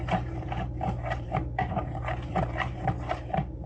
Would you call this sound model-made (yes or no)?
yes